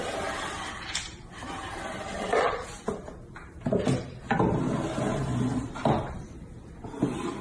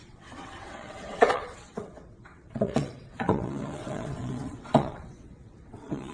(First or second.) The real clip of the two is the first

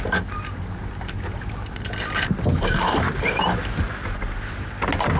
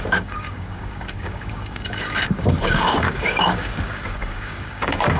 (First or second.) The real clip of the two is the first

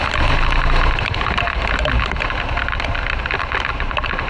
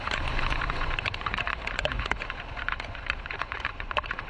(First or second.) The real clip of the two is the first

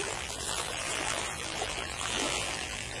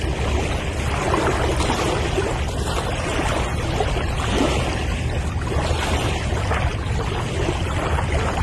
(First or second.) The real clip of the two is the second